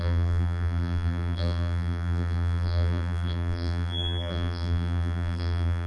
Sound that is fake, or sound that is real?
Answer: fake